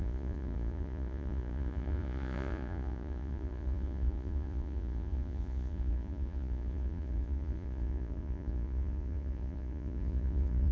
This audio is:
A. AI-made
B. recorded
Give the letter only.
A